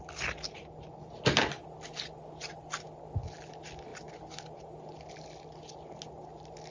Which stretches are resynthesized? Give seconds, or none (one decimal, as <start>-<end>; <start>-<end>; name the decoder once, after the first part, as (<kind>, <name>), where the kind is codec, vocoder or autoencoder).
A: none